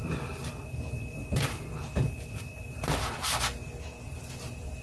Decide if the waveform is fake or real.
fake